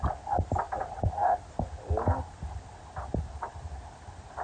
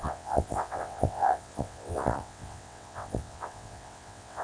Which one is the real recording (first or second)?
first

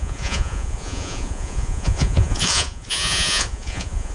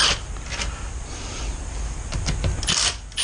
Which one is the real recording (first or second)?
second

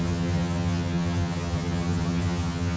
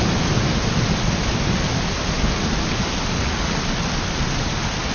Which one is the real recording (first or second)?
second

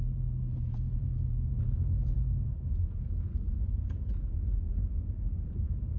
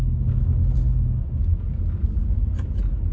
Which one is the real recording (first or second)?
second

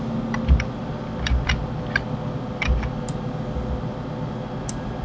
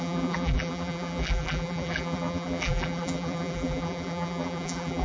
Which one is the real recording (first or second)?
first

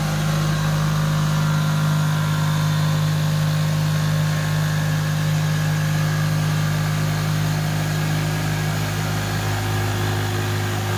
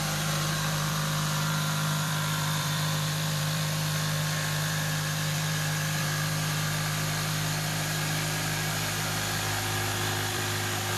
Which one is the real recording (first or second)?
first